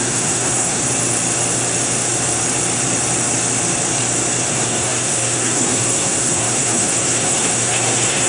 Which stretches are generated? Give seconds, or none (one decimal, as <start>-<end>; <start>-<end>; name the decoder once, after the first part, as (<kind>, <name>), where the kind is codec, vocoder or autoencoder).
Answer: 0.0-0.8 (codec, SNAC); 4.5-8.3